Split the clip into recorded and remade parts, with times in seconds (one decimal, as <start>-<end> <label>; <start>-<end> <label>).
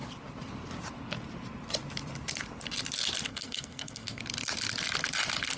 0.0-3.3 recorded; 3.3-4.2 remade; 4.2-5.6 recorded